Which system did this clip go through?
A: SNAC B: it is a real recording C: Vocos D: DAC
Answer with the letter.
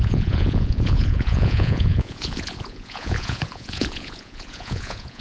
C